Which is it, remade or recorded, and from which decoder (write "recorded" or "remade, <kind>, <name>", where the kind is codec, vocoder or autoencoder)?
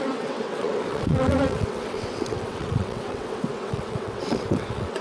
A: remade, vocoder, WaveNeXt